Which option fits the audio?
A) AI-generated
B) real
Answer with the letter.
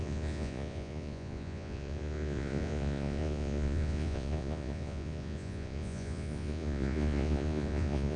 A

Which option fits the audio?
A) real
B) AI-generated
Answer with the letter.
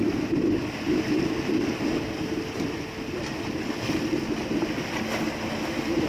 A